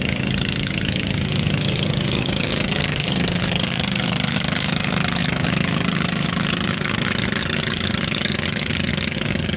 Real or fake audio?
fake